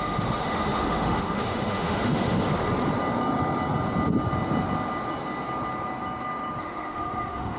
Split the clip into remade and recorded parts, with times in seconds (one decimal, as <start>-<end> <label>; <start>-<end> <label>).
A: 0.0-2.5 remade; 2.5-6.6 recorded; 6.6-7.6 remade